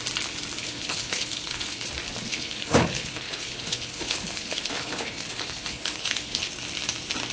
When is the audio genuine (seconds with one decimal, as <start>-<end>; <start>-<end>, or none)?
0.0-0.6; 1.9-2.3; 6.5-7.3